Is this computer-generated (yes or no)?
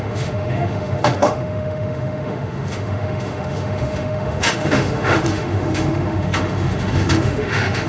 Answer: yes